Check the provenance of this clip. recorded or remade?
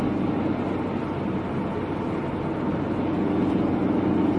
recorded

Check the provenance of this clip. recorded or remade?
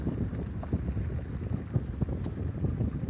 recorded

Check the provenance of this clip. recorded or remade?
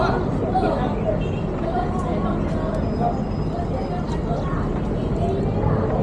recorded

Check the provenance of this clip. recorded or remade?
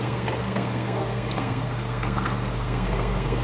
remade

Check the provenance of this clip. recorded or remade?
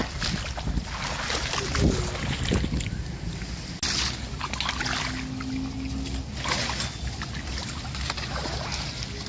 recorded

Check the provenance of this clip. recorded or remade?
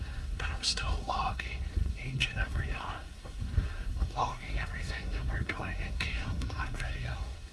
remade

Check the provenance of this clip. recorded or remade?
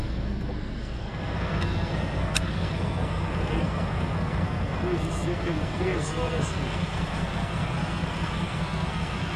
remade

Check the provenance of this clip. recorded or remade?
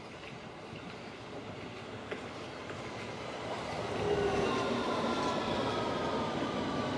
recorded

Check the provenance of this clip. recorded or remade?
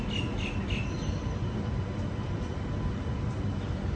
recorded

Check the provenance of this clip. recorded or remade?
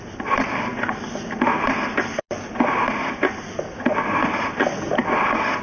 recorded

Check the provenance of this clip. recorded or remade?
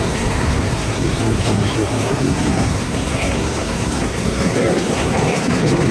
remade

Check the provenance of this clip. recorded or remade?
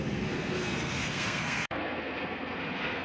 remade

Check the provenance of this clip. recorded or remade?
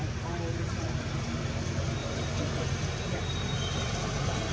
recorded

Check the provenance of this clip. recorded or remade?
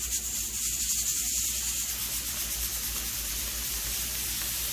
recorded